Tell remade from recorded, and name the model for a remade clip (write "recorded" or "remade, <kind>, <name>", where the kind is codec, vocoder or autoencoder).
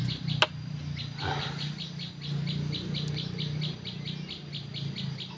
recorded